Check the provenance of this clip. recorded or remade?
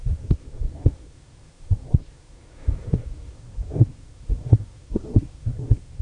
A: remade